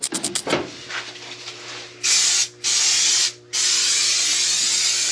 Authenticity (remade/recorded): recorded